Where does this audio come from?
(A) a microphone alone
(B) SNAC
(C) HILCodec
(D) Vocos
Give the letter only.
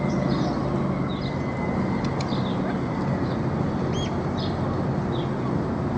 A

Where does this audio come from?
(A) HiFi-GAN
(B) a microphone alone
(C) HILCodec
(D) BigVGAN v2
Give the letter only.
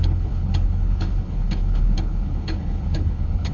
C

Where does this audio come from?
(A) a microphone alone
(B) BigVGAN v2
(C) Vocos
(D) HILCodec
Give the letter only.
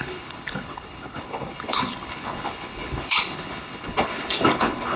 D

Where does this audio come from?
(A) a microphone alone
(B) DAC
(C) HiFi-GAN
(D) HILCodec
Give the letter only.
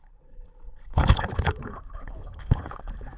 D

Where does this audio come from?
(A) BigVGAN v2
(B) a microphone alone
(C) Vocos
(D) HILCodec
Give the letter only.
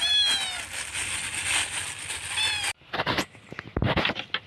B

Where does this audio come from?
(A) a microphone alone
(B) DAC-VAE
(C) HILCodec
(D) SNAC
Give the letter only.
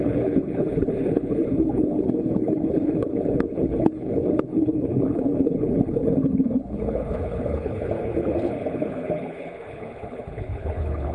C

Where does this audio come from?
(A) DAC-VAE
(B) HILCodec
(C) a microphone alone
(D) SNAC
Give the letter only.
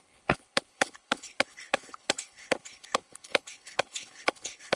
B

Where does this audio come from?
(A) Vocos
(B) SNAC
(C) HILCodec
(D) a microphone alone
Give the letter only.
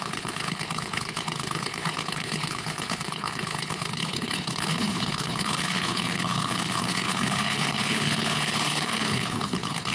C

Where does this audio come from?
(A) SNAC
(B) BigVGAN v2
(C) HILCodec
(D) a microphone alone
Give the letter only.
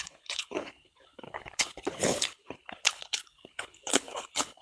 C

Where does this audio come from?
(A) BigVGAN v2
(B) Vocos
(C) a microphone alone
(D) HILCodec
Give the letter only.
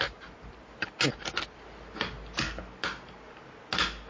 C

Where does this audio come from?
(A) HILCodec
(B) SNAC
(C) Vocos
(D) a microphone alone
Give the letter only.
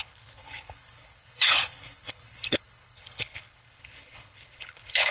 A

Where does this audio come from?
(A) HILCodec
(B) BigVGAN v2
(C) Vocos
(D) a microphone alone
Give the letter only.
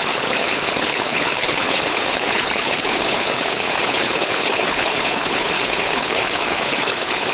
A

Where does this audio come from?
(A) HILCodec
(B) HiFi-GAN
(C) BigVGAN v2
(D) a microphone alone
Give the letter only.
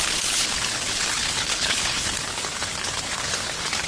A